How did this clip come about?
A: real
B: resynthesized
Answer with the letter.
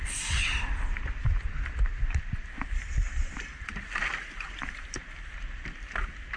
A